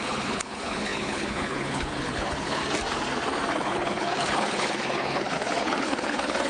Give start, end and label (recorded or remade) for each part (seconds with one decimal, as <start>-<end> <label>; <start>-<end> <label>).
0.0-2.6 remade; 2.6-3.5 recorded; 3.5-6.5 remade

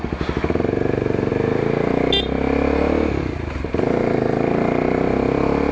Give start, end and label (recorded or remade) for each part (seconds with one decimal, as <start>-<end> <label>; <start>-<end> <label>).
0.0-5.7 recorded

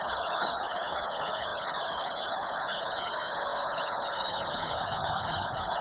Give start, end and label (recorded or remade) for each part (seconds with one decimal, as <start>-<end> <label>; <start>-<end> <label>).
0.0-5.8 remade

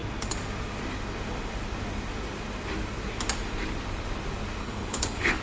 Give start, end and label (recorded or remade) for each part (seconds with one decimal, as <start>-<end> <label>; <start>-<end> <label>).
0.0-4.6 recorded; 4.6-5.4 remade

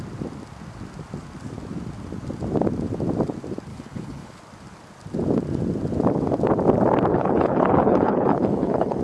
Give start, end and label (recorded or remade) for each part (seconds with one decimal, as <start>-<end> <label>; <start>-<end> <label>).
0.0-3.7 recorded; 3.7-4.4 remade; 4.4-7.1 recorded; 7.1-9.0 remade